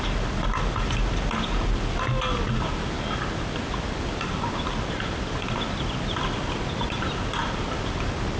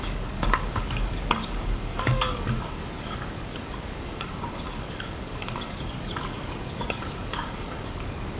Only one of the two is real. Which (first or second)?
first